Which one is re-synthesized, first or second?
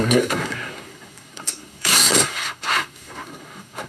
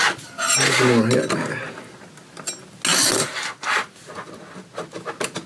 first